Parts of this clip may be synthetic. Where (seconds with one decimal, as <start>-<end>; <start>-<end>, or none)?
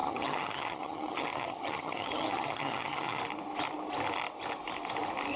0.0-3.2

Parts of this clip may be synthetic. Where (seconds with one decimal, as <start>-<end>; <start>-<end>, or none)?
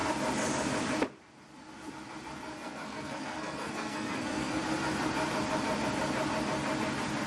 2.5-4.6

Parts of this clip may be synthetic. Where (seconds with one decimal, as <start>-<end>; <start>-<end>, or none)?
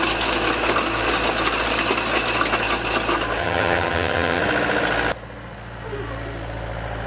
3.4-4.4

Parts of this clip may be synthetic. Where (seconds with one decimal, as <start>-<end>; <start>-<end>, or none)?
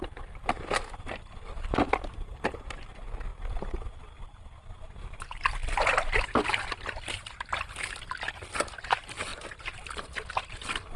0.0-3.3; 4.2-5.6; 8.8-11.0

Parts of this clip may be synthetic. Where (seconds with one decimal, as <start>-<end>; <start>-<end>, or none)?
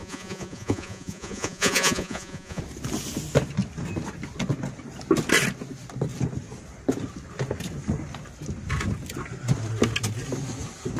0.0-2.6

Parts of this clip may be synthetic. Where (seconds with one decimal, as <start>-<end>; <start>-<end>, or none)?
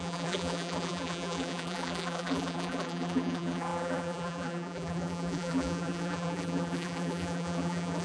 0.0-8.0